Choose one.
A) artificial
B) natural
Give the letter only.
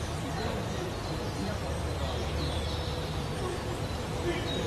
A